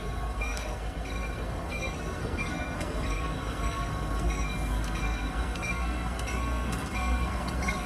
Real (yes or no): no